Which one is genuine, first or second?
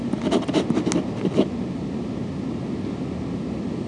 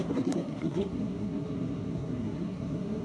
first